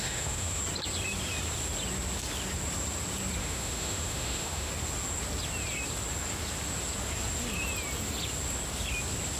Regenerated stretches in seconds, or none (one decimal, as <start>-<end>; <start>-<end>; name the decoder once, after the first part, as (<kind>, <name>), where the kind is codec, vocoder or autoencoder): 0.0-0.6 (autoencoder, DAC-VAE); 3.4-4.7